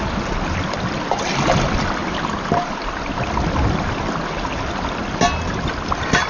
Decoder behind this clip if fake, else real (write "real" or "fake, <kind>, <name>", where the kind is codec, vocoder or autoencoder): real